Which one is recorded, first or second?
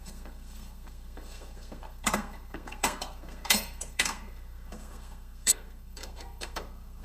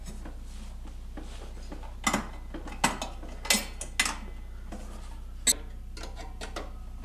second